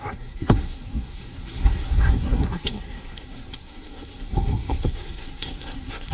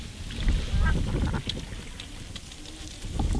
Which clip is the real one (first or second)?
second